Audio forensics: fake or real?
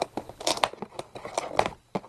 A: real